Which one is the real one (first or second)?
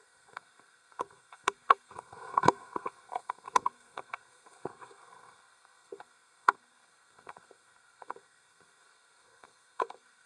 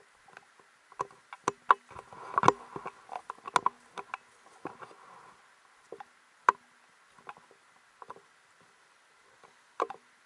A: second